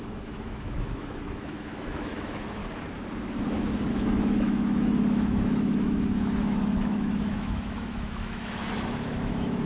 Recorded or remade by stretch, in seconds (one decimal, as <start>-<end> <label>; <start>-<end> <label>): 0.0-2.6 remade; 2.6-3.9 recorded; 3.9-9.7 remade